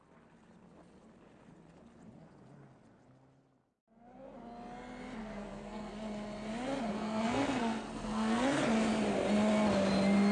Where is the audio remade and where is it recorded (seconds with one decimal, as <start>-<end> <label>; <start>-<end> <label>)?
0.0-5.2 recorded; 5.2-5.9 remade; 5.9-6.9 recorded; 6.9-8.6 remade; 8.6-10.3 recorded